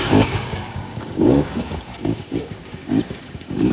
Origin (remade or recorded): remade